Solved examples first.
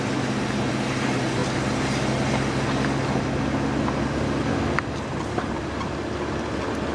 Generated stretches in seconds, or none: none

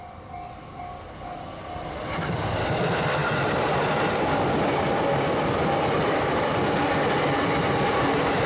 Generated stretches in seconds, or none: none